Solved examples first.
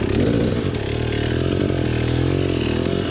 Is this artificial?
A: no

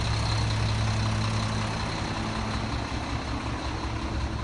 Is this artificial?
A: no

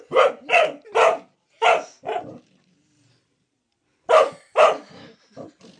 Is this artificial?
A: yes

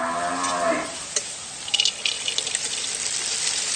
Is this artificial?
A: no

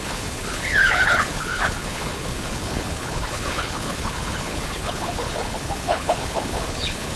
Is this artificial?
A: yes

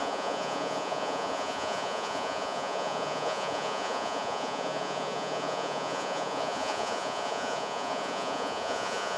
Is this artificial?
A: yes